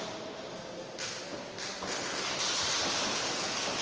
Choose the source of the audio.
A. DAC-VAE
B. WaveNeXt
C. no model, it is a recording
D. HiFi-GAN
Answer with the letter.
C